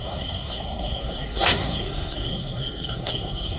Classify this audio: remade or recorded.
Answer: remade